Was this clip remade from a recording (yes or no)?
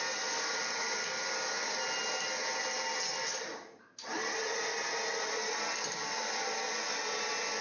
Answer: no